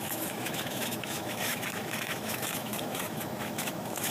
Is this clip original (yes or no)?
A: no